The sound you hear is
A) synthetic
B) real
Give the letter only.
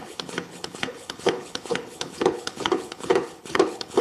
A